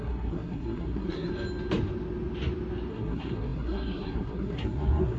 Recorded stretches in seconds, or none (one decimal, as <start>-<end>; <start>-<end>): 1.3-2.9